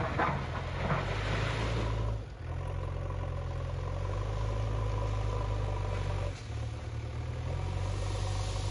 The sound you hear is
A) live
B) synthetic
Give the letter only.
A